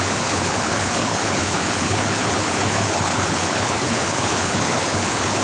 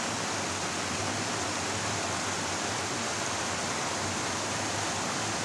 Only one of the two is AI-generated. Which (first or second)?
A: first